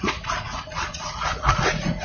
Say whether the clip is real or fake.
fake